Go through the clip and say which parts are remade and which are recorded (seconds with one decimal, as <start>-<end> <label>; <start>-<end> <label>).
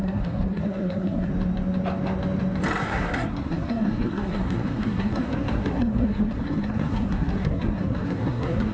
0.0-1.3 remade; 1.3-2.8 recorded; 2.8-8.7 remade